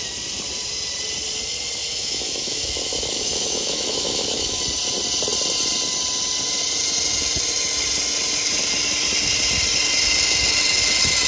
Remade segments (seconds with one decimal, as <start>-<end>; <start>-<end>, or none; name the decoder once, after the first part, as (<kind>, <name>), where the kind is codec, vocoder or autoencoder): 1.8-4.6 (autoencoder, DAC-VAE)